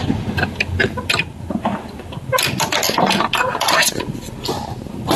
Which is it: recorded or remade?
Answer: recorded